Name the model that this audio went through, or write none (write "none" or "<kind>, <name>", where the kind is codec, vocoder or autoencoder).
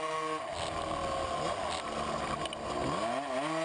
none